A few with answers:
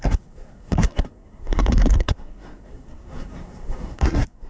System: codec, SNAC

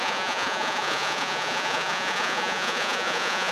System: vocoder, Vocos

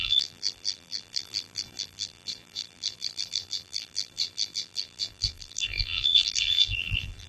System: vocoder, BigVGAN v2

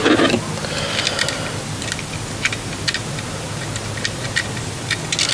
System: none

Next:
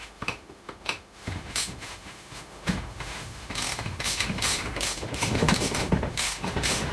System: autoencoder, DAC-VAE